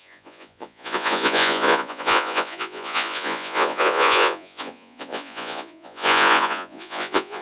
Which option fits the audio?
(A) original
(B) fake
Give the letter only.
B